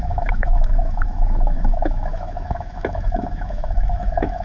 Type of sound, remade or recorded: remade